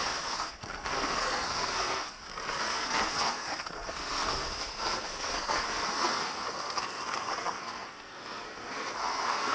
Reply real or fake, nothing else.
fake